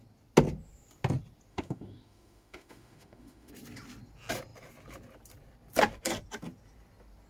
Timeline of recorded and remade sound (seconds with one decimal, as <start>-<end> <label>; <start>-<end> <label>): 0.0-1.5 recorded; 1.5-3.5 remade; 3.5-7.3 recorded